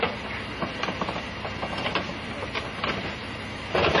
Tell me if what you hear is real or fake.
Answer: real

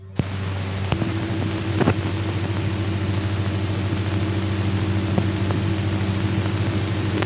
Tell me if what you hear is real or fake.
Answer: real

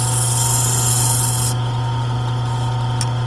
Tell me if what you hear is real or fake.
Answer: real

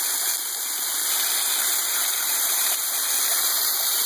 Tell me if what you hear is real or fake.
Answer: real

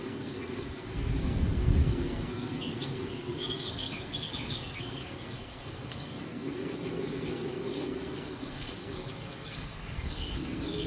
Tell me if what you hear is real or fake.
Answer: fake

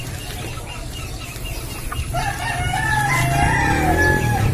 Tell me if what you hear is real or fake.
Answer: real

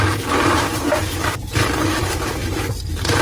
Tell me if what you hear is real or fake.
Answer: fake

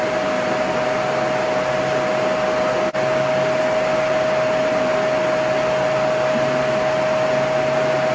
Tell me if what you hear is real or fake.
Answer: real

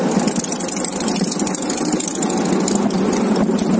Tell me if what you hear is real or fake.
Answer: real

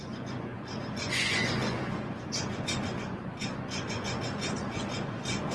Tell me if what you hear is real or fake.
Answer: fake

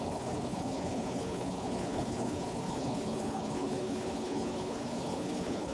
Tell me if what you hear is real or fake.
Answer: fake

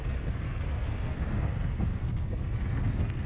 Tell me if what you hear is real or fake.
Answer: fake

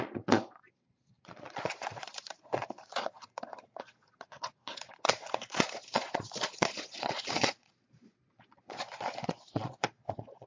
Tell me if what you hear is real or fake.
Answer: fake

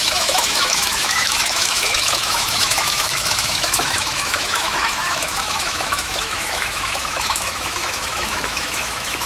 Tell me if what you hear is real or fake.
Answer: fake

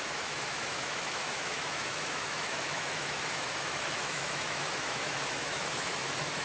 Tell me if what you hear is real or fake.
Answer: fake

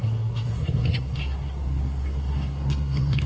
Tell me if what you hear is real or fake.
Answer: fake